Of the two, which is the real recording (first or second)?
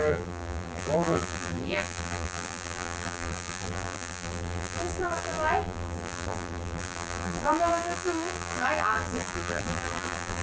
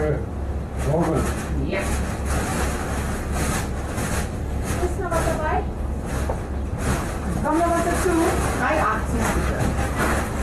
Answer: second